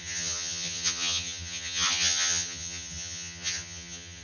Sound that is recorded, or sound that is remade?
remade